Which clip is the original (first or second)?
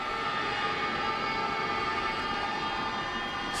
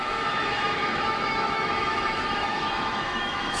first